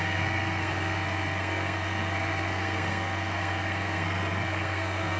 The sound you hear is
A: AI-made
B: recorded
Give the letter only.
A